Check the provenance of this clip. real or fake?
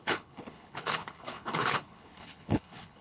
fake